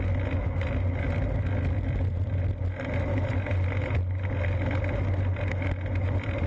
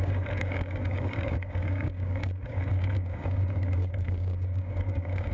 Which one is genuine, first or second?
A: first